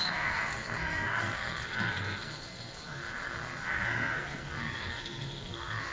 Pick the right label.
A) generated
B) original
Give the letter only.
A